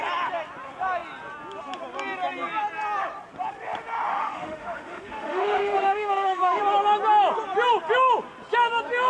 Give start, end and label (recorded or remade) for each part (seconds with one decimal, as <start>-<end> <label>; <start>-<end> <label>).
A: 0.0-4.1 recorded; 4.1-6.6 remade; 6.6-9.1 recorded